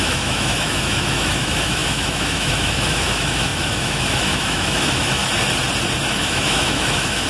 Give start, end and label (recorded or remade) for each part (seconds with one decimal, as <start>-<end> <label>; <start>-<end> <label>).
0.0-5.2 remade; 5.2-6.1 recorded; 6.1-7.3 remade